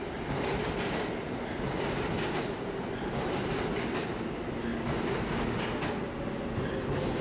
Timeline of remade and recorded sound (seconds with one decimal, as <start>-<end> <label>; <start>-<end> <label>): 0.0-7.2 recorded